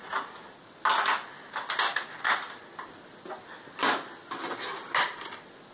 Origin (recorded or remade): recorded